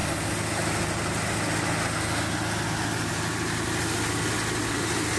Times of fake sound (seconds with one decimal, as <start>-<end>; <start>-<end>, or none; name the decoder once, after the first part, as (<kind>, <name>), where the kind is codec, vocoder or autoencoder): none